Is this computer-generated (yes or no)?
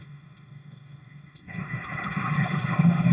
yes